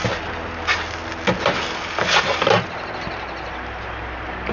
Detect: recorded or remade recorded